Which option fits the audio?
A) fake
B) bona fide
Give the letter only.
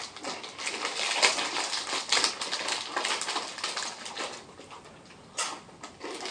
B